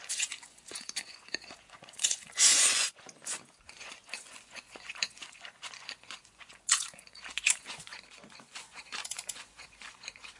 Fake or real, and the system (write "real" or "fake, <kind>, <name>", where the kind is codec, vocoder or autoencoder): fake, vocoder, Vocos